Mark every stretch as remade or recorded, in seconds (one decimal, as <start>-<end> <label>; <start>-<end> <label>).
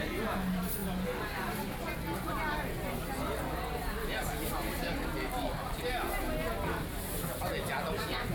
0.0-8.3 recorded